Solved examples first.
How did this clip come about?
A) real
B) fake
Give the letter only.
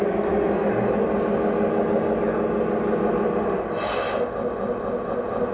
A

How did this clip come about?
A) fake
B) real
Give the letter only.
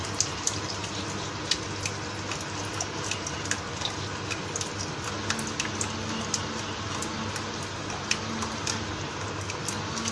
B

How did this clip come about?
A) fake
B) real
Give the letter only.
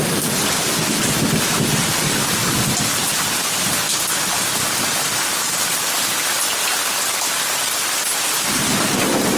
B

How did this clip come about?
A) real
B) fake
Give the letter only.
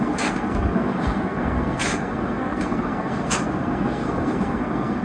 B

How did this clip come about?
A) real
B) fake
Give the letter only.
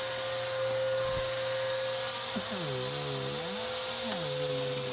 A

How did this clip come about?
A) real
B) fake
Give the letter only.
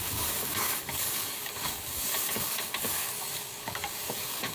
B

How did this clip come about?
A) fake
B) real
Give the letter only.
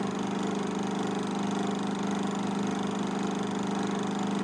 B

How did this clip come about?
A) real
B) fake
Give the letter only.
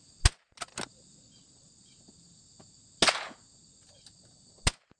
A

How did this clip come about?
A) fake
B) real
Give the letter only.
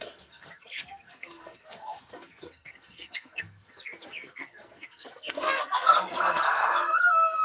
A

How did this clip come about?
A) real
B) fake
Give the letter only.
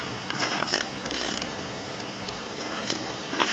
B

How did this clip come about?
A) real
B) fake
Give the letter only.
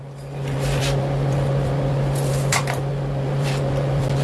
A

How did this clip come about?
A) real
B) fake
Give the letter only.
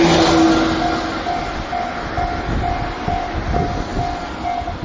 A